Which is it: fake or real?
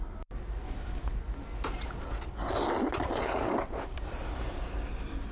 real